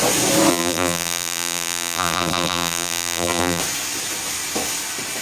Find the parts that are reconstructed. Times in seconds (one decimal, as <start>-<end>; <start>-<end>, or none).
0.5-3.6